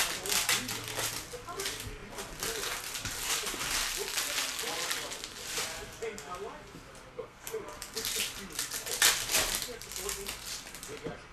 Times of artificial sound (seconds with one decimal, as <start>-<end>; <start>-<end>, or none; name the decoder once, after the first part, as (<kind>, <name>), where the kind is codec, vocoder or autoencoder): 7.1-7.6 (codec, SNAC)